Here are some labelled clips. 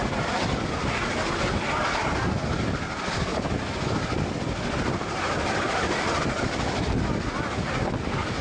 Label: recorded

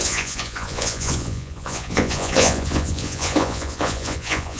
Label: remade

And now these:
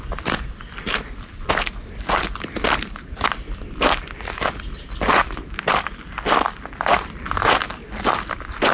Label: recorded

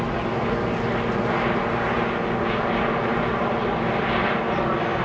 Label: recorded